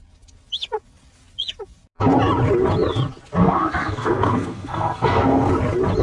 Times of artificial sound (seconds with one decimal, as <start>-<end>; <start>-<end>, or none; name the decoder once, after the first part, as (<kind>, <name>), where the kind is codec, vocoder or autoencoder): 3.4-5.5 (codec, SNAC)